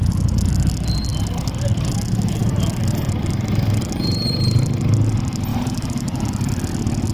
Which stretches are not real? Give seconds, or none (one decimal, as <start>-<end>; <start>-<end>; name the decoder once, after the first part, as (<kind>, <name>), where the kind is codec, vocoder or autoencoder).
3.8-4.6 (vocoder, BigVGAN v2); 5.5-6.2

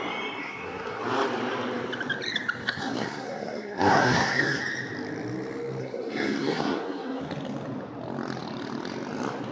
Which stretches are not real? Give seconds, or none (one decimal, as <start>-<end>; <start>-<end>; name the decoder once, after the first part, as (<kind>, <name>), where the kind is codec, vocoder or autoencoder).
0.4-1.0 (codec, SNAC); 2.6-4.6; 5.8-7.2

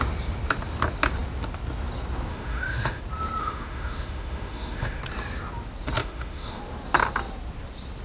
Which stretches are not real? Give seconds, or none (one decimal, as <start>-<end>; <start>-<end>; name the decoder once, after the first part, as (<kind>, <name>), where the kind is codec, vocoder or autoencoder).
2.3-3.0 (autoencoder, DAC-VAE); 3.4-5.0; 6.0-6.6